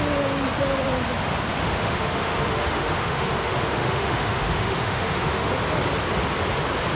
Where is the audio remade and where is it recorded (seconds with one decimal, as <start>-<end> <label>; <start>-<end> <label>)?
0.0-1.6 recorded; 1.6-5.5 remade; 5.5-7.0 recorded